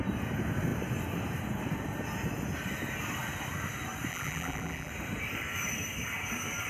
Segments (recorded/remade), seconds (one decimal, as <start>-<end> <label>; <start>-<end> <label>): 0.0-4.1 recorded; 4.1-4.9 remade; 4.9-6.7 recorded